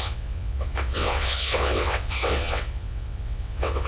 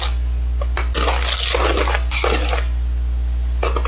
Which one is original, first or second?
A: second